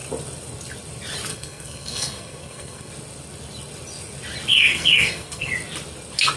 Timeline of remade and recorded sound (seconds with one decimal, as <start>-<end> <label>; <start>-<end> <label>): 0.0-1.3 recorded; 1.3-2.9 remade; 2.9-4.5 recorded; 4.5-5.5 remade; 5.5-6.4 recorded